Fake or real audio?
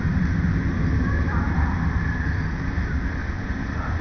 real